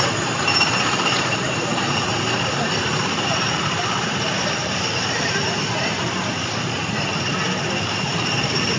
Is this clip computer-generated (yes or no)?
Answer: yes